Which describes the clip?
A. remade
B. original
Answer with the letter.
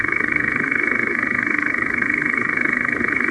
A